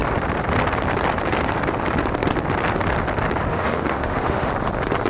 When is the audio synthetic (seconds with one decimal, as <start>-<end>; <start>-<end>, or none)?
3.5-4.5